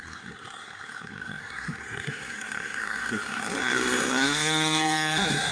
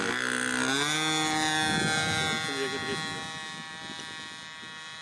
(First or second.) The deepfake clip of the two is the first